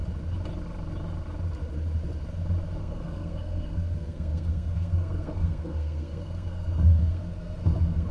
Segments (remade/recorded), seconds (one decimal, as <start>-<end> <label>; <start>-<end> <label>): 0.0-2.8 recorded; 2.8-8.1 remade